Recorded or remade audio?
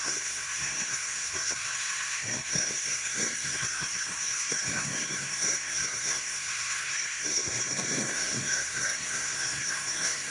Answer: remade